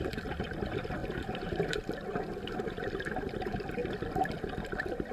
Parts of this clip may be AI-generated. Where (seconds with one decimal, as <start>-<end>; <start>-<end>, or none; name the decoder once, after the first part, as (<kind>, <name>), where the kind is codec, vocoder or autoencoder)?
1.0-1.8 (vocoder, BigVGAN v2)